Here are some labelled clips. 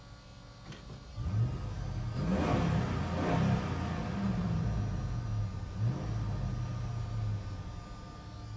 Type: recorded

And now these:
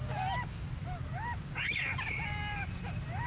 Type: recorded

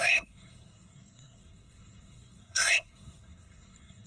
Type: remade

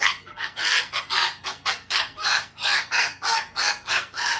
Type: remade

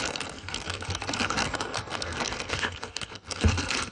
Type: remade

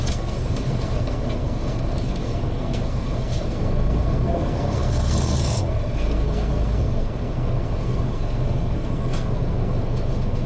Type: remade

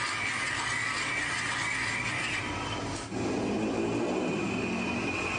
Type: recorded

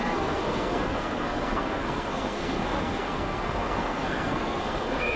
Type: remade